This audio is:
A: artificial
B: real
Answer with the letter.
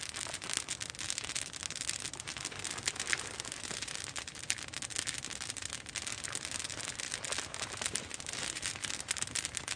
B